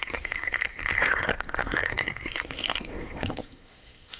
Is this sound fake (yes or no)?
yes